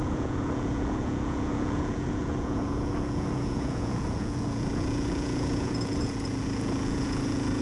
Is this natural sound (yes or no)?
no